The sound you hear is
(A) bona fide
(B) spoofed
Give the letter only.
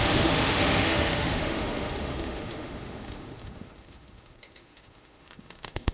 B